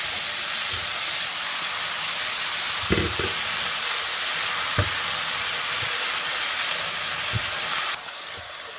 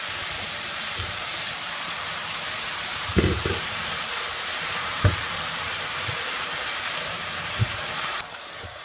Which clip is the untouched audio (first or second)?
first